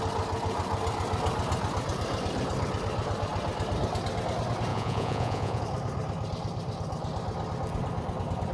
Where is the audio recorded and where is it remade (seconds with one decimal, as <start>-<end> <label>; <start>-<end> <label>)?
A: 0.0-4.7 recorded; 4.7-5.6 remade; 5.6-8.5 recorded